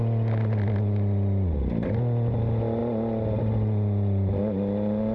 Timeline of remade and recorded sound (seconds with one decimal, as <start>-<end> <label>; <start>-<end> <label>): 0.0-5.1 recorded